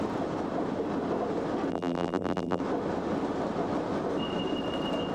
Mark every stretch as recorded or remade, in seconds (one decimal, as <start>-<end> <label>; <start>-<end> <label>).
0.0-1.7 recorded; 1.7-2.6 remade; 2.6-5.1 recorded